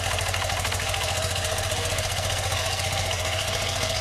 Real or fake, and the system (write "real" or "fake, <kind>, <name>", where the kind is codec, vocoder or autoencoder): fake, codec, SNAC